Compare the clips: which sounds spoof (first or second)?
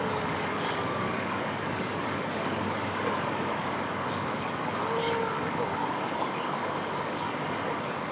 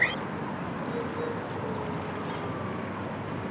first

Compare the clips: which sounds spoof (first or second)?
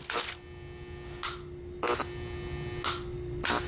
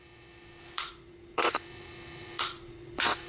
second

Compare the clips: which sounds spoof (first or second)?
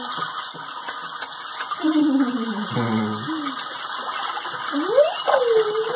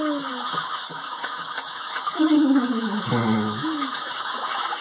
second